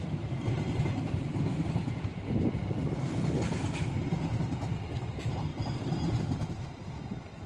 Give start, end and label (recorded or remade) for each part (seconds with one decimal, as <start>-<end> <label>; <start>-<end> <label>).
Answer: 0.0-0.4 recorded; 0.4-1.1 remade; 1.1-1.5 recorded; 1.5-2.3 remade; 2.3-5.5 recorded; 5.5-7.0 remade; 7.0-7.5 recorded